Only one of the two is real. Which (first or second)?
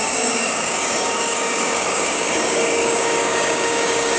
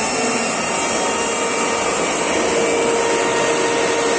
second